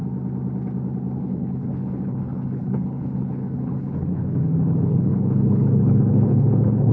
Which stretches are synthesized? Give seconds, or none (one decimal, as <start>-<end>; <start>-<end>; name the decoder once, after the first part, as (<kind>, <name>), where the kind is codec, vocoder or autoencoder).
1.2-6.9 (codec, HILCodec)